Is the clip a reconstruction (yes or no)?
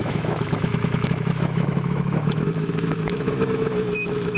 yes